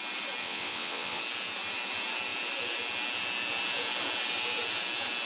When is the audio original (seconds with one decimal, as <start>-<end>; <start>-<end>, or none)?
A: 0.0-0.4; 1.2-5.3